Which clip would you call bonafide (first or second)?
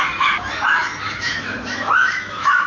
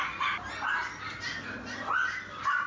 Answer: second